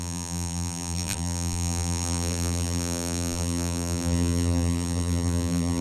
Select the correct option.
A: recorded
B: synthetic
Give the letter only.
B